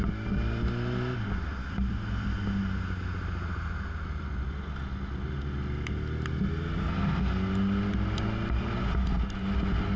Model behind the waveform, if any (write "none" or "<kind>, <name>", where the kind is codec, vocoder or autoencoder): none